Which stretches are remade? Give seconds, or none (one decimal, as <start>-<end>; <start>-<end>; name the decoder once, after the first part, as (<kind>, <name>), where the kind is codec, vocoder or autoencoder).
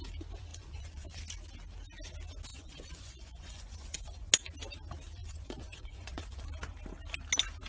0.5-1.2 (vocoder, Vocos); 2.5-4.3; 5.2-6.5